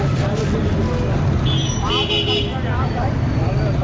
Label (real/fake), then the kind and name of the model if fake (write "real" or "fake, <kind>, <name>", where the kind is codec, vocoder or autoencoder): real